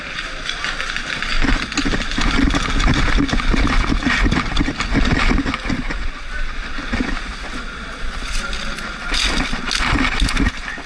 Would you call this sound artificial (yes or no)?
no